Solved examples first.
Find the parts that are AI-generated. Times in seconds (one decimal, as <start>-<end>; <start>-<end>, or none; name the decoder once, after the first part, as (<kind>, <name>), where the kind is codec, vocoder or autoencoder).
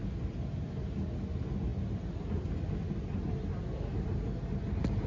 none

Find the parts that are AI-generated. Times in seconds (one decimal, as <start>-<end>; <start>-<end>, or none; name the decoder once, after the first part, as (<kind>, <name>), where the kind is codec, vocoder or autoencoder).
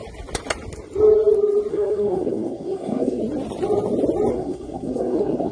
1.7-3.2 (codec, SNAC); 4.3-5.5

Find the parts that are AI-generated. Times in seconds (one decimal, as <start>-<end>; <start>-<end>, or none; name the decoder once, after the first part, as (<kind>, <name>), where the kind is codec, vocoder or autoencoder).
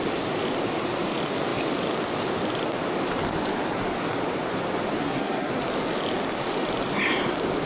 5.0-5.5 (codec, SNAC)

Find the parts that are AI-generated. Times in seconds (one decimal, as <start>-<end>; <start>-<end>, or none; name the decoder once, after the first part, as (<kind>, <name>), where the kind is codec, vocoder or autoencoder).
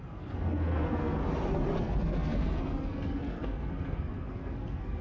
0.0-1.2 (codec, SNAC); 1.8-5.0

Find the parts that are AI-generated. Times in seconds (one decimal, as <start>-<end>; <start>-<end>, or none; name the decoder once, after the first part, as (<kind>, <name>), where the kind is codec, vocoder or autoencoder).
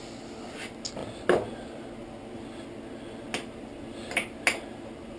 none